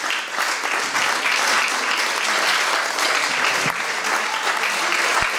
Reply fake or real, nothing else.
real